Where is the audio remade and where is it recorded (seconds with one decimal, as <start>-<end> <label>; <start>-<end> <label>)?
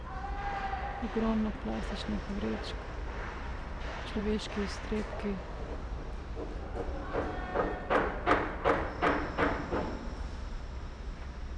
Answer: 0.0-11.6 recorded